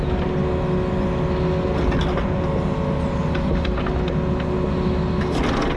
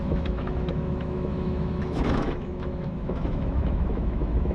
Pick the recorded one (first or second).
first